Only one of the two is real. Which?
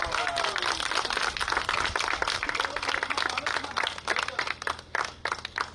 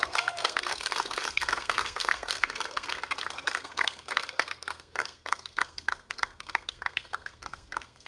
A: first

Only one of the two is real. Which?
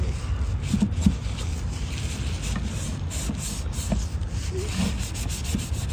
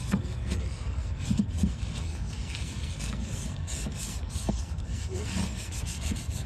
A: first